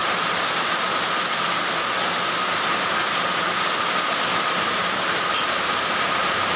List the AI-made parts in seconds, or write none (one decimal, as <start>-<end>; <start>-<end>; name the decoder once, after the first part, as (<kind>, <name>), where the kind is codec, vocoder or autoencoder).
none